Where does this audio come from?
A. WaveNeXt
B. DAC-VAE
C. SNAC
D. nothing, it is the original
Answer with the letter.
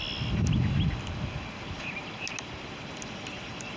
D